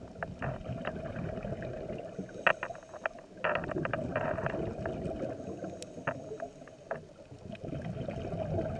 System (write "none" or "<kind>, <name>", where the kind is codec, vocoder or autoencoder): none